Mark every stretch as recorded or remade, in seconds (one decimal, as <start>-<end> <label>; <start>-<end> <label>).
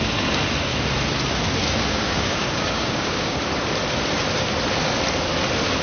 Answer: 0.0-1.9 recorded; 1.9-3.4 remade; 3.4-5.8 recorded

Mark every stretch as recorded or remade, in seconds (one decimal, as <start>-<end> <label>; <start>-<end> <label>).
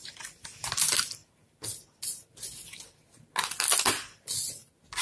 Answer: 0.0-5.0 recorded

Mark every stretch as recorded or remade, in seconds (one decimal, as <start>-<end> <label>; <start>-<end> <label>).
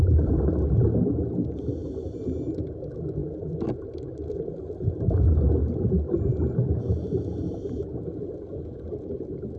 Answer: 0.0-9.6 recorded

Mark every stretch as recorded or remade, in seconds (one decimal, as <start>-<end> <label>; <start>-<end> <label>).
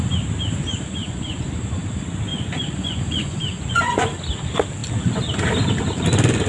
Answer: 0.0-1.0 recorded; 1.0-1.5 remade; 1.5-2.3 recorded; 2.3-4.2 remade; 4.2-6.5 recorded